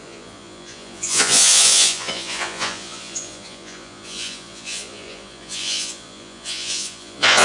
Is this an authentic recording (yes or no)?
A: no